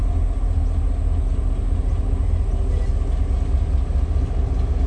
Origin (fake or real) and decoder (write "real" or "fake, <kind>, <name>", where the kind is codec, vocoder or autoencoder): real